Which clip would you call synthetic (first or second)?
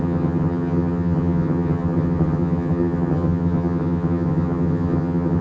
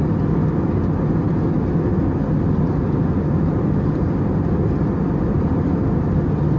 first